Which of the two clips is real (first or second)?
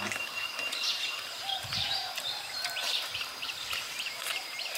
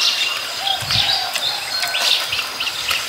second